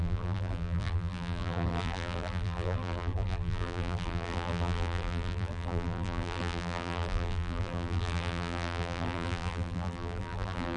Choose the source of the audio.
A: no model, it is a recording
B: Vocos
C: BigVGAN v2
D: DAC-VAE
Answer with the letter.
C